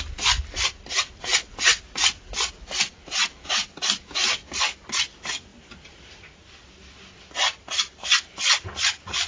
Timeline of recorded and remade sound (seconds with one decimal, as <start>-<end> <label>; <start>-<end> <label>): 0.0-9.3 recorded